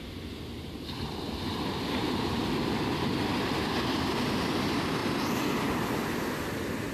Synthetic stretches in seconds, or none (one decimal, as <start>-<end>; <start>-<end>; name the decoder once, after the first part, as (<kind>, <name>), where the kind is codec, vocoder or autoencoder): none

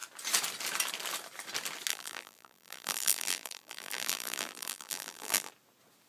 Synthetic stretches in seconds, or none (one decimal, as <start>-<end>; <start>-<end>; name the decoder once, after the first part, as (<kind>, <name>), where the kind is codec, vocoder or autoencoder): 1.9-5.5 (vocoder, BigVGAN v2)

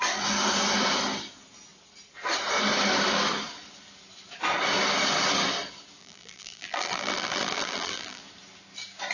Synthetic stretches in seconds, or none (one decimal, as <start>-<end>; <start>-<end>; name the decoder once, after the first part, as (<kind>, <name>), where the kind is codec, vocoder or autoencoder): 6.0-8.2 (vocoder, BigVGAN v2)

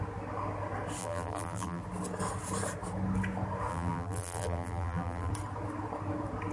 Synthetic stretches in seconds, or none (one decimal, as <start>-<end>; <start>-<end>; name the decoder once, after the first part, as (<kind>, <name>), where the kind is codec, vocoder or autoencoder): 1.0-1.8 (vocoder, BigVGAN v2); 3.7-5.3

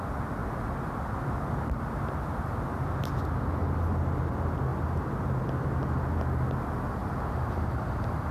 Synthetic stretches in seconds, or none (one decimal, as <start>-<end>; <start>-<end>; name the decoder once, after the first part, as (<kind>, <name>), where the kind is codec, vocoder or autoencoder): 4.7-5.3 (vocoder, BigVGAN v2); 7.0-7.9

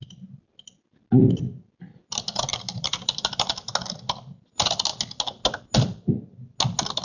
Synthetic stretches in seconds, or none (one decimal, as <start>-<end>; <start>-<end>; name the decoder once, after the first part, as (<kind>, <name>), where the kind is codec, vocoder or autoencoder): 2.5-3.3 (vocoder, BigVGAN v2)